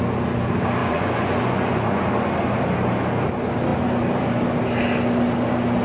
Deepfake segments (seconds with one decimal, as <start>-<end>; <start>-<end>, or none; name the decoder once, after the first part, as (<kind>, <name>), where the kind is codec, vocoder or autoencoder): 0.8-2.0 (vocoder, Vocos)